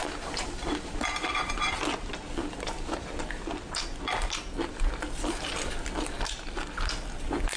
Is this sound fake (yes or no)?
no